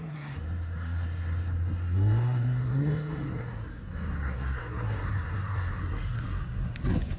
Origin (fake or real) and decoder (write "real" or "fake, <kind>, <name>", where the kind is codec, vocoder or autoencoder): fake, codec, SNAC